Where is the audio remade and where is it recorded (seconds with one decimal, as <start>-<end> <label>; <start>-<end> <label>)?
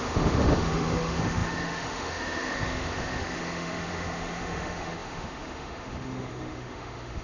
0.0-7.2 remade